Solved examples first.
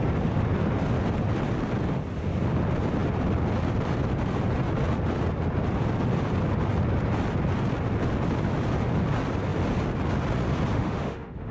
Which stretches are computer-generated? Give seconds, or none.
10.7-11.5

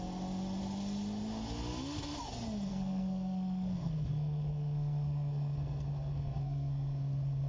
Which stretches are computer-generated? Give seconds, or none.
2.7-7.5

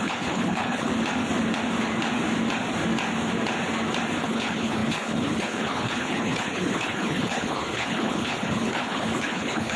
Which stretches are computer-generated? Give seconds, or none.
0.0-0.9; 4.2-9.8

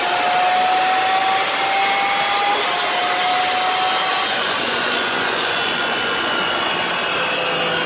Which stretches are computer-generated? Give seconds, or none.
4.1-6.9

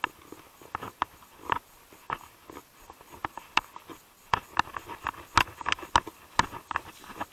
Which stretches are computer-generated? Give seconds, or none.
3.2-3.7

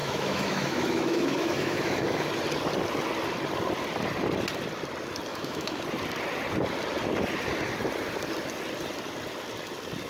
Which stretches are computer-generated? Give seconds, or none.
0.0-2.3; 5.3-5.8

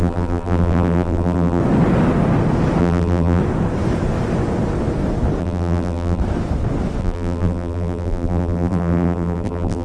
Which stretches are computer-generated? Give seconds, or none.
0.0-1.6; 2.8-3.4; 5.4-6.2; 7.0-9.8